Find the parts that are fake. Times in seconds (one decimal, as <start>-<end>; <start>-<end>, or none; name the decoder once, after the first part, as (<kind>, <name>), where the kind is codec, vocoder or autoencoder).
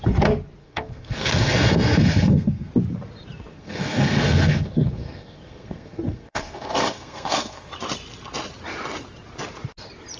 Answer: 0.6-2.7 (codec, SNAC); 3.5-7.7